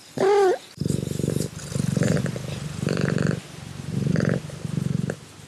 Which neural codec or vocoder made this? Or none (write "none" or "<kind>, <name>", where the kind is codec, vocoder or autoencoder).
none